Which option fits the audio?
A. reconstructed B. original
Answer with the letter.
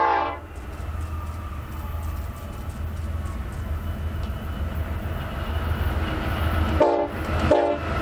B